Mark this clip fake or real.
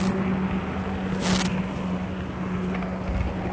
real